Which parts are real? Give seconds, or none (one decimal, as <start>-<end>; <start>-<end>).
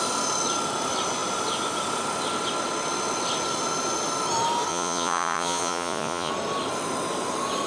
0.0-4.7; 6.3-7.7